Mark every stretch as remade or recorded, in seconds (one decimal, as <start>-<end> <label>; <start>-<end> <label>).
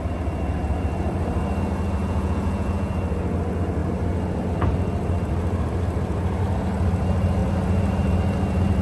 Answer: 0.0-2.0 recorded; 2.0-2.9 remade; 2.9-8.8 recorded